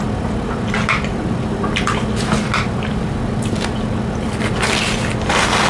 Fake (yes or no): no